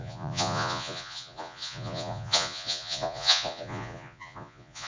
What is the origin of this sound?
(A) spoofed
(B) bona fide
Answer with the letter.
A